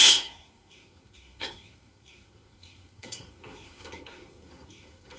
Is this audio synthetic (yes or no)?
yes